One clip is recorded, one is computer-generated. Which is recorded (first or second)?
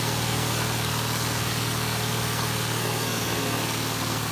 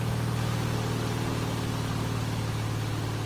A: second